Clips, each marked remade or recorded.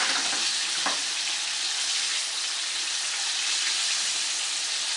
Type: recorded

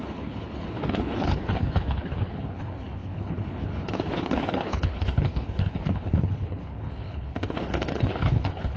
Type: remade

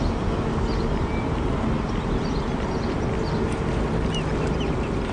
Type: recorded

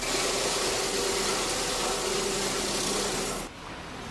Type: recorded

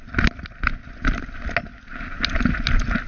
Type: recorded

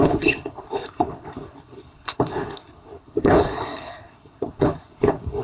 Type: remade